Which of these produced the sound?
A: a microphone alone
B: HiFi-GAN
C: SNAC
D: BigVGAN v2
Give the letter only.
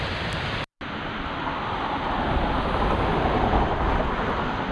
A